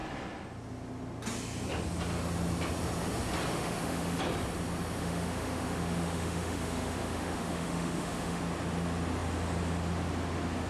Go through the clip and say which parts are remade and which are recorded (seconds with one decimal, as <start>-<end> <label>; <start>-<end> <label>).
0.0-3.5 recorded; 3.5-4.2 remade; 4.2-5.0 recorded; 5.0-8.4 remade; 8.4-10.7 recorded